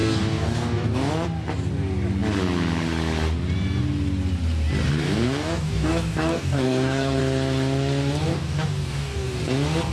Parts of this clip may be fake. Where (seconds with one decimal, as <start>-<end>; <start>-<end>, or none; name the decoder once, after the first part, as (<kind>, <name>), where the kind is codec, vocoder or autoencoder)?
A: 0.0-1.1 (codec, DAC); 5.0-7.2; 8.3-9.4